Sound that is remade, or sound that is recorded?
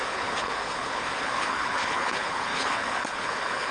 remade